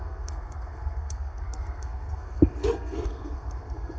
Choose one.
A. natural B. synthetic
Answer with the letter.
B